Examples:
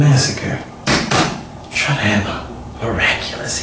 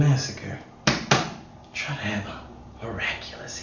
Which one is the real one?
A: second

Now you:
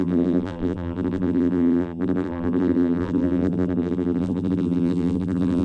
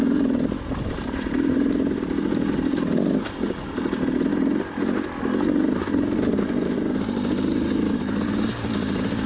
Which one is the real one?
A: second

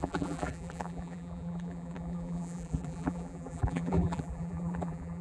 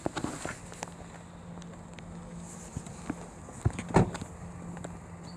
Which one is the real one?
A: second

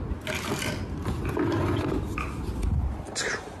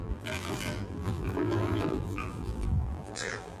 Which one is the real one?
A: first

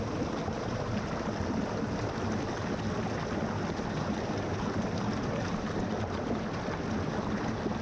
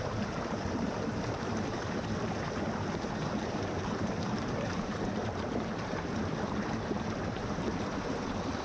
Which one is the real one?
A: first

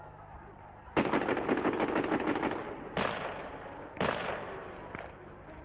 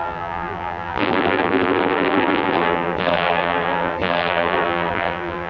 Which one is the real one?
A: first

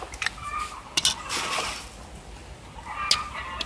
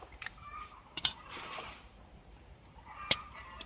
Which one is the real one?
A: first